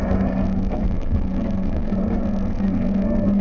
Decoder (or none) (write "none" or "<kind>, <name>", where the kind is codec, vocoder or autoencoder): codec, SNAC